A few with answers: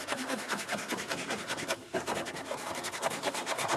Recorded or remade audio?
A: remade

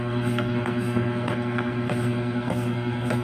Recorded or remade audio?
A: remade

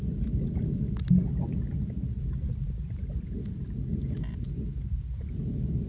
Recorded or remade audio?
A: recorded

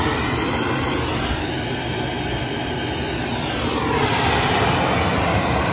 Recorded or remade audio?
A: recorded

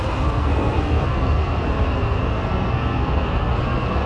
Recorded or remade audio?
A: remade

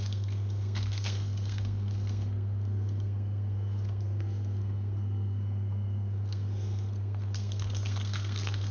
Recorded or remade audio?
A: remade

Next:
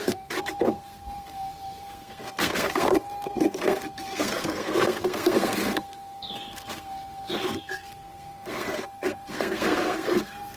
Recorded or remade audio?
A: remade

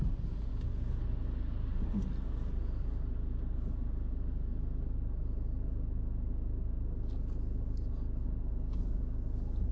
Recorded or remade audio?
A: recorded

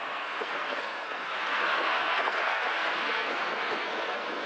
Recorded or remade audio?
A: remade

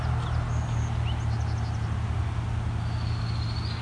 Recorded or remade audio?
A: recorded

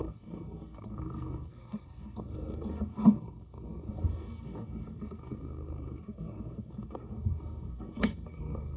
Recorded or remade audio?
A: remade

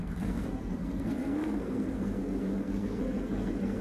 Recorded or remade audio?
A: remade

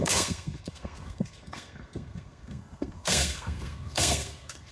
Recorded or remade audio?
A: remade